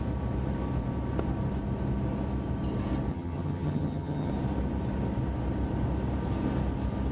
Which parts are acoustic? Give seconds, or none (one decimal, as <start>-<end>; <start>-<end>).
0.0-3.1; 4.3-7.1